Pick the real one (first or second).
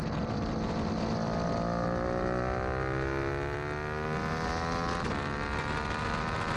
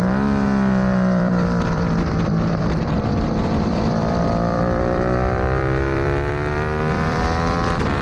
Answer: first